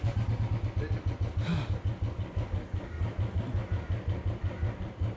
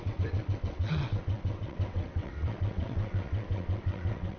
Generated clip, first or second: second